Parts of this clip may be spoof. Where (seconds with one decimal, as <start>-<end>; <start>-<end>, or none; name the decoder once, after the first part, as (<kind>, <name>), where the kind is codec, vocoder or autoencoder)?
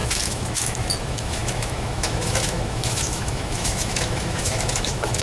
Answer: 0.0-5.2 (autoencoder, DAC-VAE)